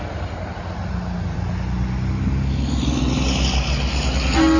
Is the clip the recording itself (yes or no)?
yes